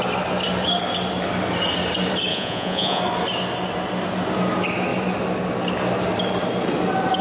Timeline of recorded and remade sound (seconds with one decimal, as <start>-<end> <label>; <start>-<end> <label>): 0.0-2.3 recorded; 2.3-3.0 remade; 3.0-7.2 recorded